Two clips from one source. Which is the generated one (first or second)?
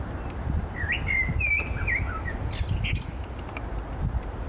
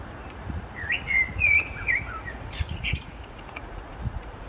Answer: second